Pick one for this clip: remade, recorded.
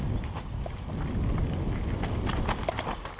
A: recorded